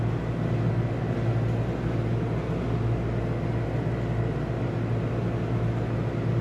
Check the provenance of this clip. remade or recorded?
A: recorded